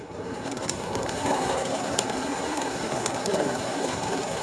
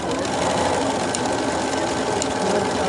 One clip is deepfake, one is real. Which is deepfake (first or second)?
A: first